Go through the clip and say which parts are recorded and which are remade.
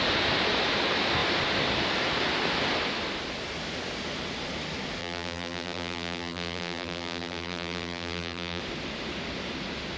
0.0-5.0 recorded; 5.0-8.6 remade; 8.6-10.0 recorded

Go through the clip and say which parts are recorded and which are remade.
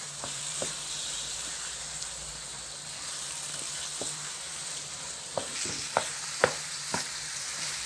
0.0-2.5 remade; 2.5-3.8 recorded; 3.8-5.3 remade; 5.3-5.8 recorded; 5.8-7.9 remade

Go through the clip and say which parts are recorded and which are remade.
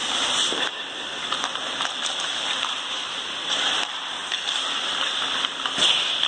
0.0-3.8 remade; 3.8-4.2 recorded; 4.2-5.1 remade; 5.1-6.3 recorded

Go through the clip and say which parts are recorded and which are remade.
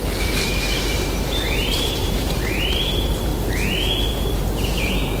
0.0-3.3 remade; 3.3-4.1 recorded; 4.1-5.2 remade